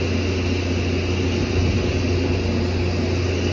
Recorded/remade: recorded